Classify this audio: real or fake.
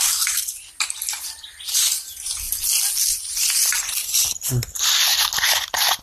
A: real